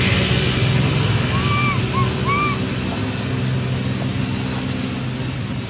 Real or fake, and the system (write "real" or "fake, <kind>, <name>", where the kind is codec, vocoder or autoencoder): real